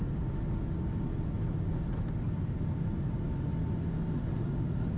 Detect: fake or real real